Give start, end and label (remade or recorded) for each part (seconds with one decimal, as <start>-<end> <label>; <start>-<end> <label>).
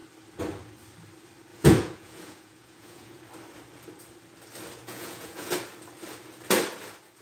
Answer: 0.0-1.5 recorded; 1.5-3.2 remade; 3.2-4.8 recorded; 4.8-5.5 remade; 5.5-7.2 recorded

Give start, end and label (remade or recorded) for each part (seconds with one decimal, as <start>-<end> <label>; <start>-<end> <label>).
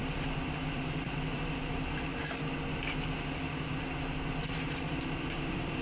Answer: 0.0-2.1 remade; 2.1-5.1 recorded; 5.1-5.8 remade